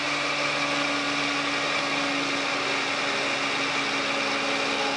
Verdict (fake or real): real